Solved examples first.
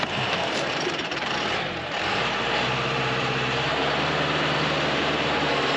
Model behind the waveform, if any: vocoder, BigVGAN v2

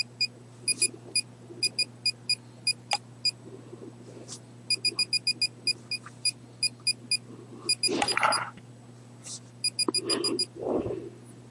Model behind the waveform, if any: none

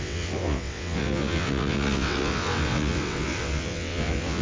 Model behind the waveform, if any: vocoder, WaveNeXt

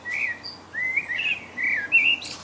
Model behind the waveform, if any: none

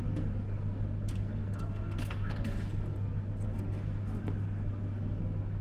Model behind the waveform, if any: codec, SNAC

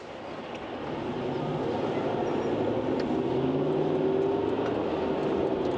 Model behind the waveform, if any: none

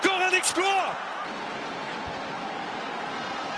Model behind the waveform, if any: none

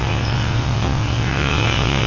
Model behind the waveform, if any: vocoder, WaveNeXt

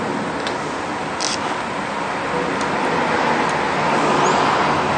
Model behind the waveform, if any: none